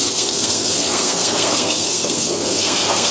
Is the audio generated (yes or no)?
yes